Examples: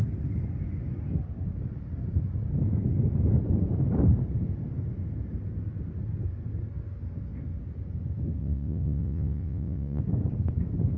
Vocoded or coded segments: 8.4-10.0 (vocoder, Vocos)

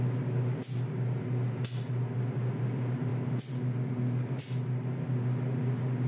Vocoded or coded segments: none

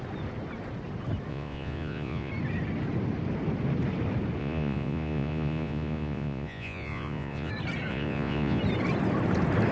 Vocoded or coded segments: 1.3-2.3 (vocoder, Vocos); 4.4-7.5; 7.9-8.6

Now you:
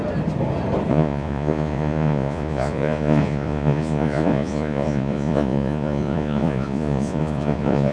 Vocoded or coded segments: 0.9-7.9 (vocoder, Vocos)